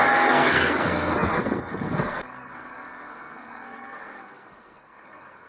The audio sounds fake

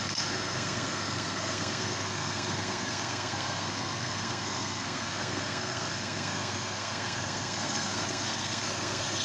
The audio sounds fake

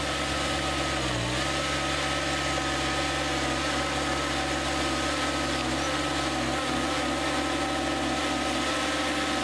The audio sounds real